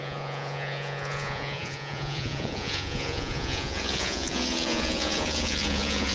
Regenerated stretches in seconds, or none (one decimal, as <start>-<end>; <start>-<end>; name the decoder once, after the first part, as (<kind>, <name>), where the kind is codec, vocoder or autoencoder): 0.0-6.1 (vocoder, Vocos)